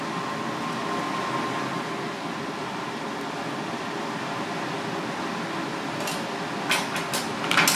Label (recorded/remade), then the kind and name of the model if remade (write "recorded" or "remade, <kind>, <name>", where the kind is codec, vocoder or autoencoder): recorded